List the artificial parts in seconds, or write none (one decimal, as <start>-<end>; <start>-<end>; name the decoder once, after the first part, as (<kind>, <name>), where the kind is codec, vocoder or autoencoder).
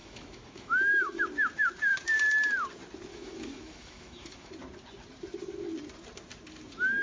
0.0-1.2 (autoencoder, DAC-VAE); 3.1-4.5